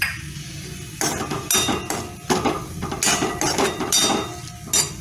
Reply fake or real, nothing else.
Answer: real